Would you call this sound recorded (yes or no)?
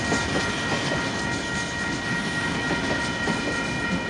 yes